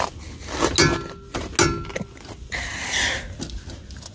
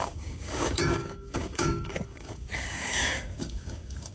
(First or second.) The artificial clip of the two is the second